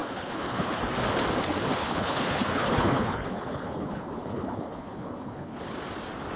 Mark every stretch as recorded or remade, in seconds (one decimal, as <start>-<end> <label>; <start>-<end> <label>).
0.0-0.8 remade; 0.8-1.8 recorded; 1.8-5.6 remade; 5.6-6.4 recorded